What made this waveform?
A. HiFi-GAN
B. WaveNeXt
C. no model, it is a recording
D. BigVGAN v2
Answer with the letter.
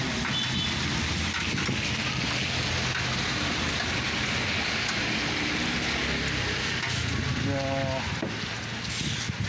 C